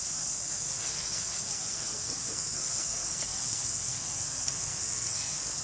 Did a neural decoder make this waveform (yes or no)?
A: yes